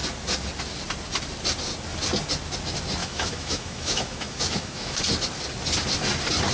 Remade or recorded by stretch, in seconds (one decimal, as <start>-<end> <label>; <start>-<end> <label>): 0.0-3.0 recorded; 3.0-5.0 remade; 5.0-6.5 recorded